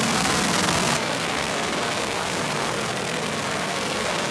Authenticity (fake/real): fake